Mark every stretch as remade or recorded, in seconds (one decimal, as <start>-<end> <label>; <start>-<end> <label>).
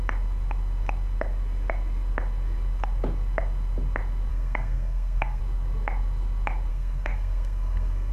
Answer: 0.0-4.3 recorded; 4.3-5.4 remade; 5.4-6.7 recorded; 6.7-8.1 remade